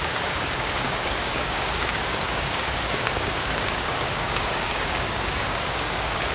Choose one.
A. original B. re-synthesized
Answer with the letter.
B